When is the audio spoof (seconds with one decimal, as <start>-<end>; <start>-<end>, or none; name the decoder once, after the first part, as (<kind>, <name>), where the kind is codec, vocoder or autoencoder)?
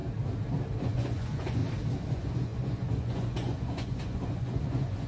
0.8-1.6 (vocoder, Vocos); 2.1-5.1